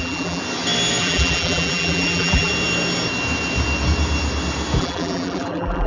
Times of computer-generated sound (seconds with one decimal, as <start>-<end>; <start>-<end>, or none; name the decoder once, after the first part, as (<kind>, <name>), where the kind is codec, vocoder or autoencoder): 0.0-0.4 (vocoder, BigVGAN v2); 1.0-2.5; 4.8-5.9